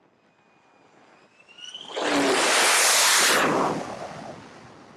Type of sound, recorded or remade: recorded